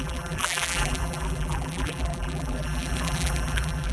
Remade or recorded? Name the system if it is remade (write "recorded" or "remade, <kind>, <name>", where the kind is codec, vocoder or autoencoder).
remade, vocoder, BigVGAN v2